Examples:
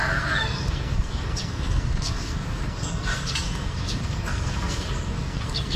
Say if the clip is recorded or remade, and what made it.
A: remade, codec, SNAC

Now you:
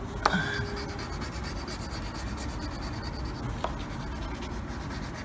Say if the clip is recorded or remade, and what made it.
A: recorded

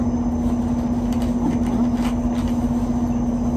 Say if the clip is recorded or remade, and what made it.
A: recorded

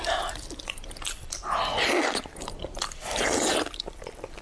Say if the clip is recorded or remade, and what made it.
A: recorded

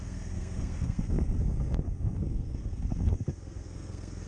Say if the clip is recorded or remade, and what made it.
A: remade, codec, SNAC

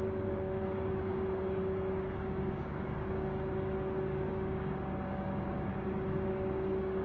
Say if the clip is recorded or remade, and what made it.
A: remade, codec, DAC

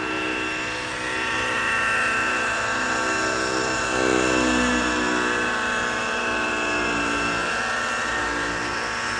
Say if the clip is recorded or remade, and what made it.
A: recorded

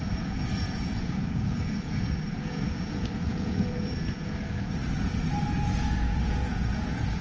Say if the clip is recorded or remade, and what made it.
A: remade, vocoder, Vocos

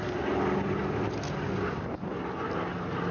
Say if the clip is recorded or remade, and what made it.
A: recorded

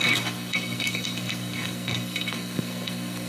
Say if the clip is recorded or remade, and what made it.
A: remade, codec, SNAC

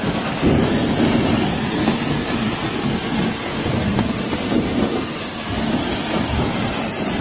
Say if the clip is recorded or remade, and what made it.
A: recorded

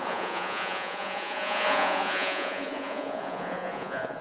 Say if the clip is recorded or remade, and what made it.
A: remade, vocoder, Vocos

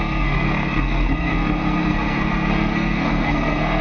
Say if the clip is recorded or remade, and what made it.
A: remade, codec, SNAC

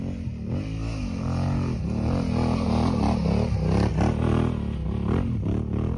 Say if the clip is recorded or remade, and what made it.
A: recorded